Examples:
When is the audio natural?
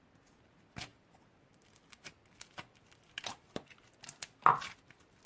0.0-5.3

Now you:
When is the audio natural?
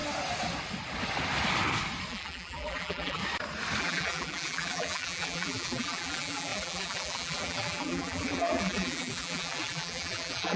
0.0-2.1; 3.2-3.8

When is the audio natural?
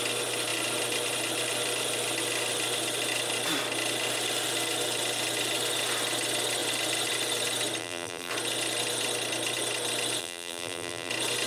0.0-7.8; 8.3-10.2; 11.1-11.5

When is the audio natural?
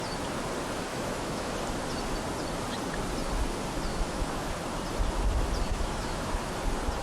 0.0-0.9; 1.5-3.9; 4.5-5.7; 6.3-7.0